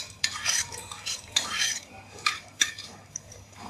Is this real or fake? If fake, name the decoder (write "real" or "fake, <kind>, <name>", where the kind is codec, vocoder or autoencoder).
fake, codec, DAC